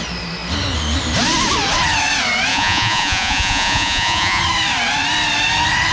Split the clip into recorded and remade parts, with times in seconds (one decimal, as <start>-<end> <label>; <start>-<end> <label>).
0.0-2.5 recorded; 2.5-4.4 remade; 4.4-5.9 recorded